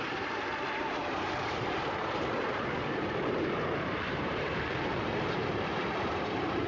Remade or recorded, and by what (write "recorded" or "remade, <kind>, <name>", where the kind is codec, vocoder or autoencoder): remade, vocoder, BigVGAN v2